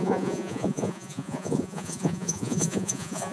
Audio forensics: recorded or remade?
remade